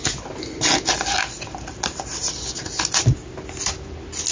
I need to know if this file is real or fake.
real